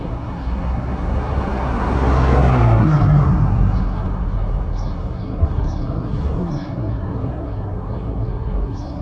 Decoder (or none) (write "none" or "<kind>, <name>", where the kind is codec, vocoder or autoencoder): codec, SNAC